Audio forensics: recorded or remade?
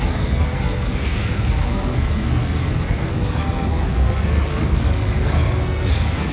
remade